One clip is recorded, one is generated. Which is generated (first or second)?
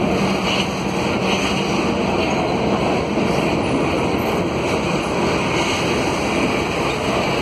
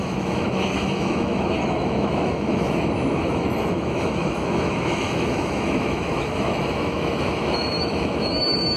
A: second